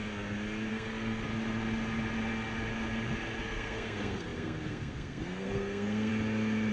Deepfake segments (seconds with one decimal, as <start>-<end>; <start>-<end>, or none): 0.7-1.3; 3.4-6.1

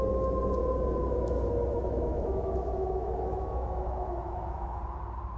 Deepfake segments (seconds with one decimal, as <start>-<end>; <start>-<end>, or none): 1.7-4.8

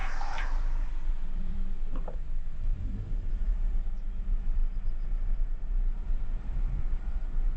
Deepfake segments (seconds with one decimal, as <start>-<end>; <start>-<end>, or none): 0.0-2.7; 3.3-4.6; 6.3-7.6

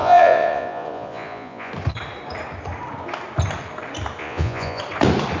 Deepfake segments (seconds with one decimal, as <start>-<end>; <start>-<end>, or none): 0.0-1.7; 4.2-4.8

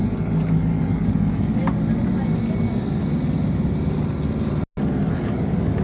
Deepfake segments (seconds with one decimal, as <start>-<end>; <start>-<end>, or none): 0.0-1.6; 5.1-5.8